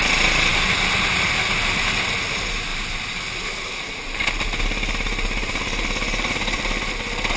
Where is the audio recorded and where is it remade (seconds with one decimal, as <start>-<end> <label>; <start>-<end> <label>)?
0.0-7.4 recorded